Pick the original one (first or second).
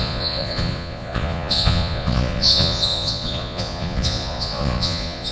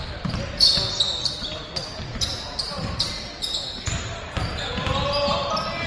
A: second